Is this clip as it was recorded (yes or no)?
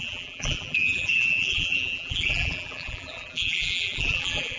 no